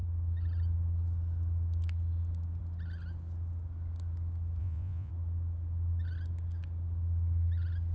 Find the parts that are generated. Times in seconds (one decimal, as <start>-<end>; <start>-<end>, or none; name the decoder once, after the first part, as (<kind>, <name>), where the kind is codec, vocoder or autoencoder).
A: 4.6-5.1 (vocoder, Vocos)